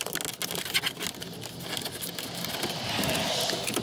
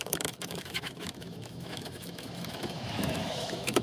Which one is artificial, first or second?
second